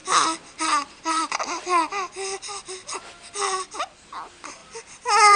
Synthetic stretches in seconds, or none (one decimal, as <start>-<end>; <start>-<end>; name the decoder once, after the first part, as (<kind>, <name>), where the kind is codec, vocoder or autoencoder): 0.0-5.4 (vocoder, BigVGAN v2)